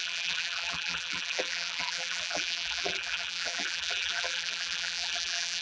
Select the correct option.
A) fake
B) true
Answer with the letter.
A